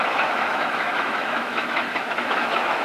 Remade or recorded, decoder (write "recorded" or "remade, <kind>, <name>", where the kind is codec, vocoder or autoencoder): remade, autoencoder, DAC-VAE